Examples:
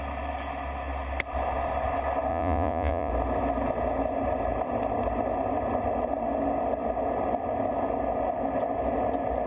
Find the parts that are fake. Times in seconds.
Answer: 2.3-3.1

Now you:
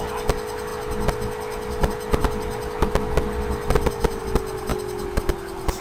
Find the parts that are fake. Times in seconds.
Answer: 4.7-5.3

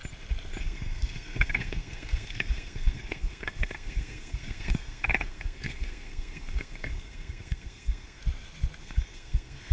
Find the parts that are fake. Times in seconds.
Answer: 0.6-8.2; 8.8-9.7

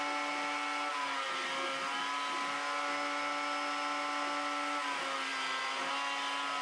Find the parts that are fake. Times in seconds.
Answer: none

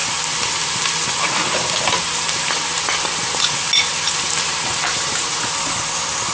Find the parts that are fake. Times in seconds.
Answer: none

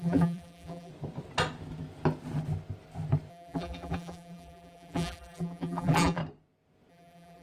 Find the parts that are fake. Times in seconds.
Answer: 0.0-0.9; 3.3-6.2; 6.9-7.4

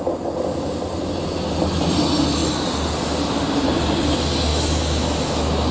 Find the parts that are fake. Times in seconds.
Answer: 4.5-5.7